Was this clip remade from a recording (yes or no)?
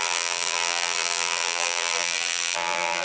yes